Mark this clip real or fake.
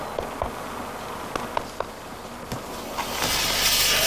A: real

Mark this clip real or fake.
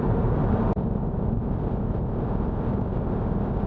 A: real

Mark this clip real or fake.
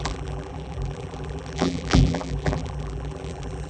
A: fake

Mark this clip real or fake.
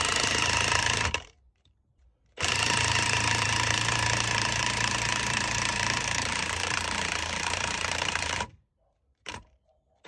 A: fake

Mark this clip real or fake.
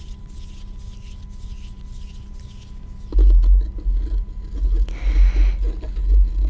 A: real